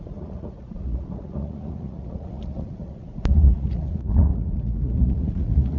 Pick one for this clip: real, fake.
fake